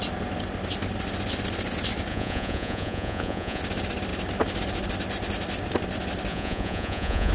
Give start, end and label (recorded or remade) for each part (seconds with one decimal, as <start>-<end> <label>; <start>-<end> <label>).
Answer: 0.0-2.1 recorded; 2.1-3.6 remade; 3.6-6.3 recorded; 6.3-7.3 remade